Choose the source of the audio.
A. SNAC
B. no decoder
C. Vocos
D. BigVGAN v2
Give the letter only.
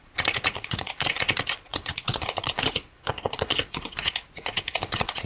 C